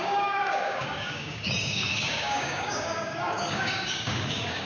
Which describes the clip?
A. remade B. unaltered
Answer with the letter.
A